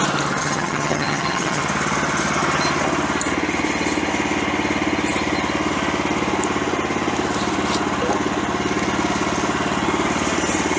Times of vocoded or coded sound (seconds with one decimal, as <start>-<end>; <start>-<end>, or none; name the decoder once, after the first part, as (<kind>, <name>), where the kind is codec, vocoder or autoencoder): 0.4-1.6 (vocoder, HiFi-GAN)